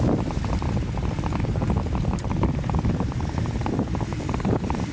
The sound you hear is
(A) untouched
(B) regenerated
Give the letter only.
A